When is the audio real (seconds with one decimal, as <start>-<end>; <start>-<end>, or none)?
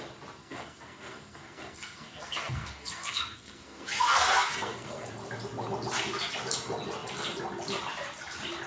0.0-0.4; 5.1-8.7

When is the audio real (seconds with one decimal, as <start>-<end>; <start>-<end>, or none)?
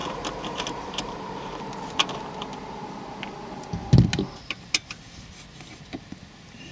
1.6-6.7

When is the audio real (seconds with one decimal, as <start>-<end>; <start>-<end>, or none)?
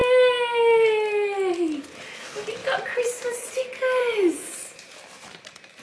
0.0-2.6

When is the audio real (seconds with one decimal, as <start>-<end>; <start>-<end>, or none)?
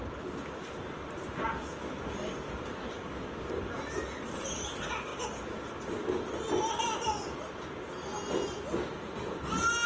0.0-9.9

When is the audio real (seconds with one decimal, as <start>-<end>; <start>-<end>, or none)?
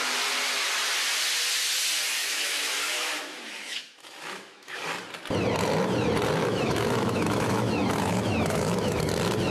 0.0-2.2; 4.8-6.4; 9.0-9.5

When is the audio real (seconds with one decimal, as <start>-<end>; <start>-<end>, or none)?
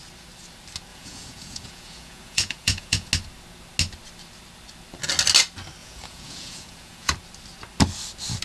0.0-0.9; 3.1-5.8; 7.1-8.4